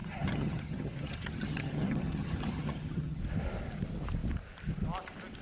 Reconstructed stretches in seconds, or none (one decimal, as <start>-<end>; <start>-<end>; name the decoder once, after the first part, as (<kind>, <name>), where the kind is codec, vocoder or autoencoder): 0.0-3.2 (vocoder, HiFi-GAN)